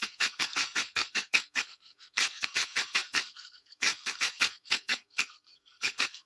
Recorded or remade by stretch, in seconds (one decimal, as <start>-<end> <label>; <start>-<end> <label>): 0.0-6.3 remade